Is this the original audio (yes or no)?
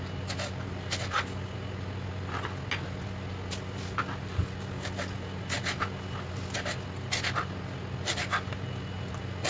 yes